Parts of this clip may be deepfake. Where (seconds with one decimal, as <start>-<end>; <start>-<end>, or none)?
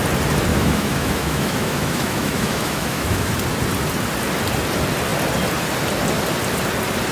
0.5-3.3